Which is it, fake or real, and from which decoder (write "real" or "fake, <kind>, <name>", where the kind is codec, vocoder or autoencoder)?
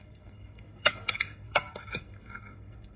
fake, codec, SNAC